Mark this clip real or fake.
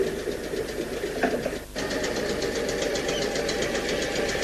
fake